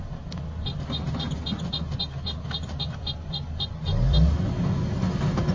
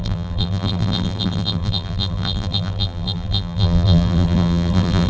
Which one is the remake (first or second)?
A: second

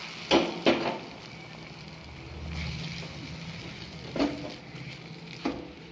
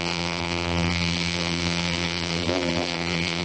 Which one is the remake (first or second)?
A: second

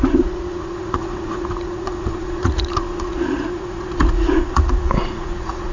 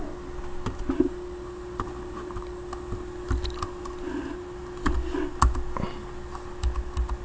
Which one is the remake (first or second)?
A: first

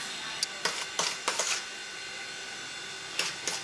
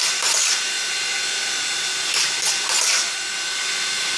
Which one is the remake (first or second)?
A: second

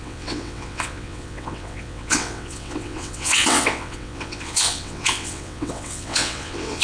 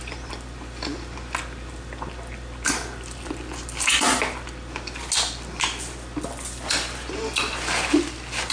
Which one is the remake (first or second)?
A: first